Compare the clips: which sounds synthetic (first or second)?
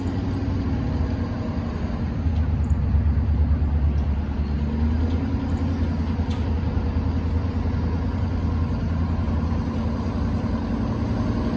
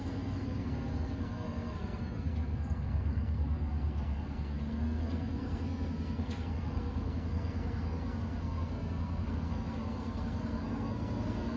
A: second